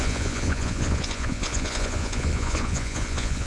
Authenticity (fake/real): fake